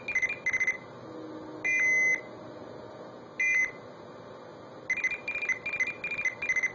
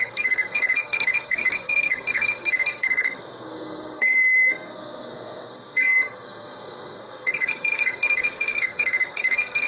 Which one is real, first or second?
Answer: first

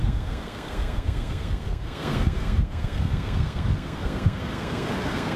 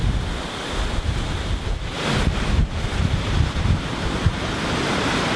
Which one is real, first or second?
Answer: second